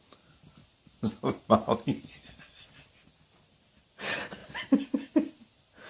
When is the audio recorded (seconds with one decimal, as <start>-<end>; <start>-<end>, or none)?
0.0-0.6; 1.2-4.4